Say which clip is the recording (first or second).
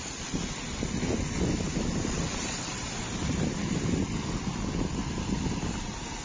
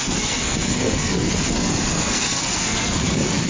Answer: first